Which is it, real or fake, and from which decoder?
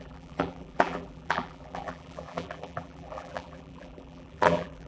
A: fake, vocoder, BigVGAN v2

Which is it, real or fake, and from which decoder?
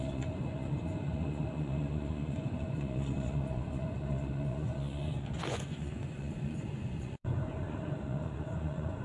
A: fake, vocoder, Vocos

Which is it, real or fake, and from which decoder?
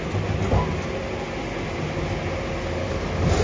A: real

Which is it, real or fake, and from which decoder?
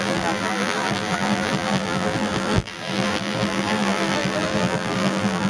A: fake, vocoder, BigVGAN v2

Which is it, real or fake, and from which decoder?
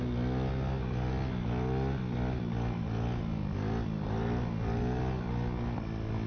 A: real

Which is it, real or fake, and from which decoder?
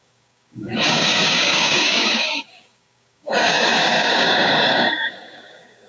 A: fake, codec, DAC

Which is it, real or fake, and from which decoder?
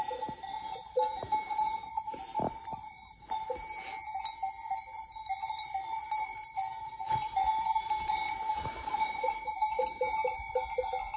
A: real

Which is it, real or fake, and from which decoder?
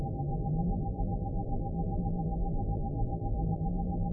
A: fake, vocoder, BigVGAN v2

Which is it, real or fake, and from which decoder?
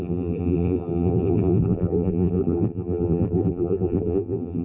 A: fake, vocoder, BigVGAN v2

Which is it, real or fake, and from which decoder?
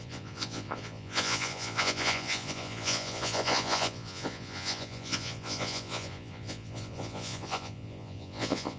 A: fake, vocoder, Vocos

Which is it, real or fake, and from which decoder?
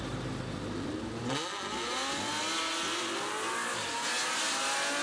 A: real